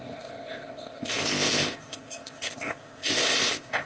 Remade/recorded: remade